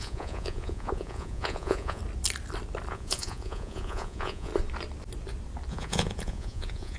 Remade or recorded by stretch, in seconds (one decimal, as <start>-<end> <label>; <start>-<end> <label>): 0.0-2.0 remade; 2.0-2.9 recorded; 2.9-4.5 remade; 4.5-5.7 recorded; 5.7-7.0 remade